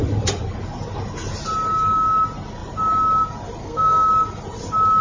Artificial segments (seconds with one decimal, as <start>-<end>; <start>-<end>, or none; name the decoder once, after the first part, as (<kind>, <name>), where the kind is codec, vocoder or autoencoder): 3.6-4.1 (codec, SNAC)